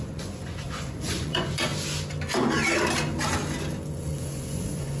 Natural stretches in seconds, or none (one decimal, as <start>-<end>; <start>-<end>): 1.7-3.9